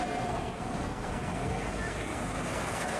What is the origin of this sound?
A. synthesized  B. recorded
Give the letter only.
A